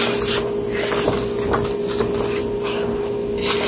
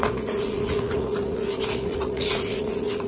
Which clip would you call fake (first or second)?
second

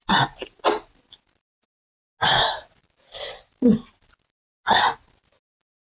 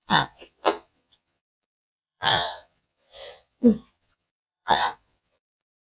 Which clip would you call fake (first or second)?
second